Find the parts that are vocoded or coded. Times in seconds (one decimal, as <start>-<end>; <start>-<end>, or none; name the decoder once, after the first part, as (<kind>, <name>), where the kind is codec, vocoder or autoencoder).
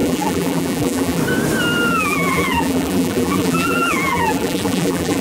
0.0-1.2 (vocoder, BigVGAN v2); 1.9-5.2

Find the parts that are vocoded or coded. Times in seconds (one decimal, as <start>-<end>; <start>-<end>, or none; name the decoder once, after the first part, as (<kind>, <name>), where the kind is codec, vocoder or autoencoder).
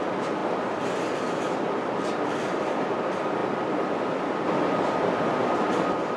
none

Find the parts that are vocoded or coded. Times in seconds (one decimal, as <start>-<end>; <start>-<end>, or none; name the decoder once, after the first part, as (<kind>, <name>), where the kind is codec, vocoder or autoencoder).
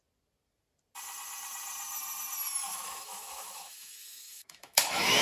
2.7-5.2 (autoencoder, DAC-VAE)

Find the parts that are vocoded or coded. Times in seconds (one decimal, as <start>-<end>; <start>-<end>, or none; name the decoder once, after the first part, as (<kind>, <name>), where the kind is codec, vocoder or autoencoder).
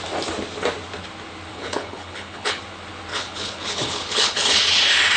1.5-2.6 (codec, HILCodec); 3.1-4.8